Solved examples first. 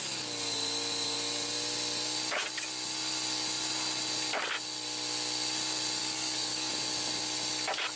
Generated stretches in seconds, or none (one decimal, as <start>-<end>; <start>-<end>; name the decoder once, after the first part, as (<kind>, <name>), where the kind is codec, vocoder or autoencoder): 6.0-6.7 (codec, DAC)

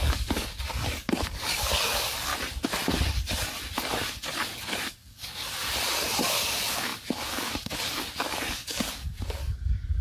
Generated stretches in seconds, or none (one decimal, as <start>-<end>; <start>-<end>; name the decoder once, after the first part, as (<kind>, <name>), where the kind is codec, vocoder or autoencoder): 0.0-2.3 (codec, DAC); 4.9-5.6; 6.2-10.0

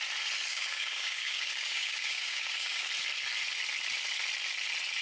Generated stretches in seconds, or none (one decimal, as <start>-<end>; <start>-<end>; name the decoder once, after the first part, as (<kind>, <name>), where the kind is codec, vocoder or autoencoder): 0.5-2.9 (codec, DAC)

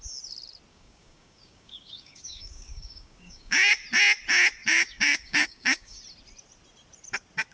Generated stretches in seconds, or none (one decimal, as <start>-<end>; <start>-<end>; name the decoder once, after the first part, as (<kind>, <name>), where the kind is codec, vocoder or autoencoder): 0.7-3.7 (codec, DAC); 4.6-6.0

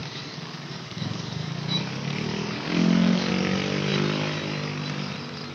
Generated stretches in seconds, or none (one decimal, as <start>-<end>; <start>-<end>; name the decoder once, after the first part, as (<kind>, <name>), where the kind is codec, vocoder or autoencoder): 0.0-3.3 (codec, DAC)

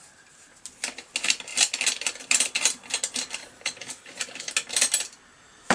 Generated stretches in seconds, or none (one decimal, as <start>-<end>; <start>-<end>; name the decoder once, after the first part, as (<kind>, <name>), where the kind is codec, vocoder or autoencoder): 3.4-4.5 (codec, DAC)

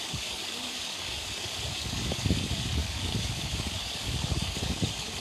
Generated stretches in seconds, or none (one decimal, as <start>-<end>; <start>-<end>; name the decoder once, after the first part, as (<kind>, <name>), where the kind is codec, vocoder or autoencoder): 0.0-5.2 (codec, DAC)